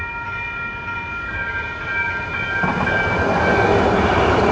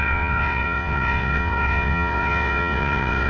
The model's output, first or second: second